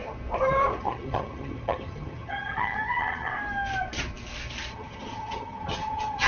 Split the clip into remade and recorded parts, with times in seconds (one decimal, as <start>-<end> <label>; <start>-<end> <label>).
0.0-0.8 recorded; 0.8-3.3 remade; 3.3-4.7 recorded; 4.7-6.3 remade